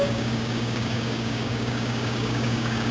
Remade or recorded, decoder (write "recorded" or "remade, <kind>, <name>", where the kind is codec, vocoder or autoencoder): remade, codec, DAC